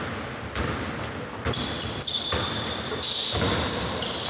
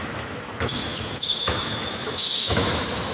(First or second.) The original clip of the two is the first